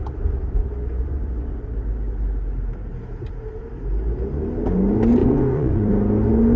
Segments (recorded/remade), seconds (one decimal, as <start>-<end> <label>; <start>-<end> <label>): 0.0-1.0 recorded; 1.0-1.5 remade; 1.5-5.2 recorded; 5.2-5.9 remade; 5.9-6.6 recorded